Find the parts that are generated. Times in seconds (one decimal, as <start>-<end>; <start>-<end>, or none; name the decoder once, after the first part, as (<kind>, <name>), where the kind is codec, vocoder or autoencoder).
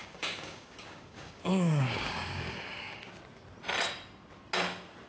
0.0-3.1 (codec, DAC)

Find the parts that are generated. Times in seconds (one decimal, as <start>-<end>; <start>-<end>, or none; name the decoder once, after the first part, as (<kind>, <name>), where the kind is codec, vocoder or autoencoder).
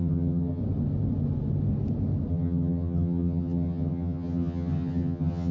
0.0-0.6 (vocoder, HiFi-GAN); 2.3-5.5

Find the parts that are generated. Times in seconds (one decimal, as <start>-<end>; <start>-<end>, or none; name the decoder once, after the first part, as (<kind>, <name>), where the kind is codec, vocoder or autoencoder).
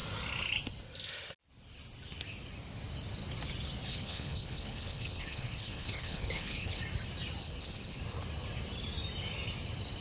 3.9-6.8 (codec, HILCodec); 7.4-8.0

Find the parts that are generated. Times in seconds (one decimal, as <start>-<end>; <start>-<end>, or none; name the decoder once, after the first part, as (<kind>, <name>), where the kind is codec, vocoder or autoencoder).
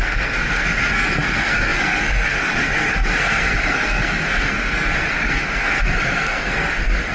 0.0-7.1 (codec, SNAC)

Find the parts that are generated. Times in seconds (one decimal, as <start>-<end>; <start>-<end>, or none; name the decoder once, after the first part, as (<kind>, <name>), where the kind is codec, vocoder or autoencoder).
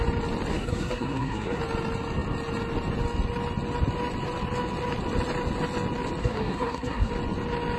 0.5-1.6 (codec, SNAC); 6.2-7.1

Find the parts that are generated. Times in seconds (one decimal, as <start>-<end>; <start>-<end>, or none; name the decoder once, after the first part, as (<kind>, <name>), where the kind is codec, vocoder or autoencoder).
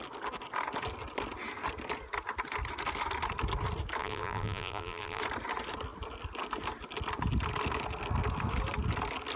4.0-5.2 (vocoder, BigVGAN v2)